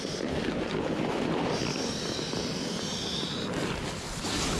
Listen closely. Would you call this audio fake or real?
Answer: real